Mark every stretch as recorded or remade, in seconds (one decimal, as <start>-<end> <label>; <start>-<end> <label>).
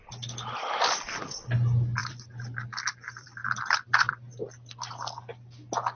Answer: 0.0-2.0 recorded; 2.0-2.6 remade; 2.6-3.4 recorded; 3.4-4.3 remade; 4.3-6.0 recorded